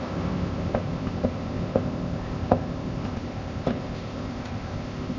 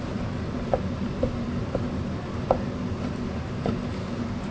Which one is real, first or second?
second